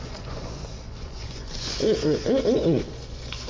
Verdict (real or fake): fake